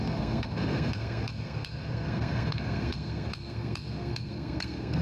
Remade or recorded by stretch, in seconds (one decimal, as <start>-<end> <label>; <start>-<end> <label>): 0.0-5.0 remade